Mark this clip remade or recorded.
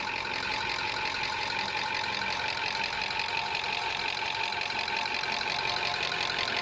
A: recorded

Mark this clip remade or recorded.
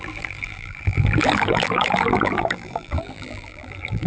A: remade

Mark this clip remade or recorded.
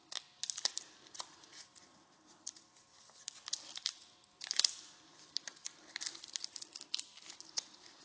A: recorded